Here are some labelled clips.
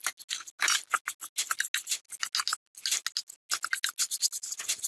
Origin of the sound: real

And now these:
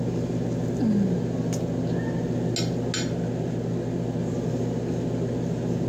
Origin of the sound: real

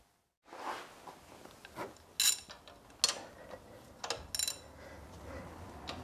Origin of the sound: real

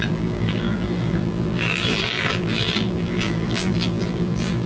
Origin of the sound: fake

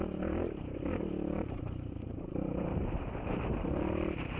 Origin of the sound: fake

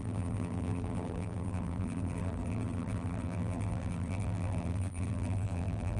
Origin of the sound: fake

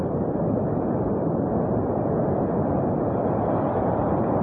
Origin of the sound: real